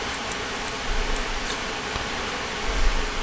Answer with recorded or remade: recorded